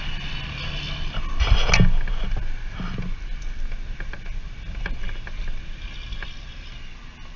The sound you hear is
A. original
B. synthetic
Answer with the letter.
A